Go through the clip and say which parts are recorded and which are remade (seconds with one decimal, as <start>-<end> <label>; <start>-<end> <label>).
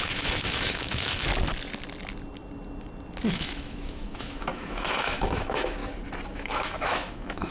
0.0-1.3 remade; 1.3-3.3 recorded; 3.3-5.8 remade; 5.8-6.3 recorded; 6.3-7.5 remade